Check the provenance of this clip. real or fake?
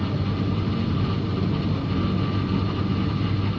real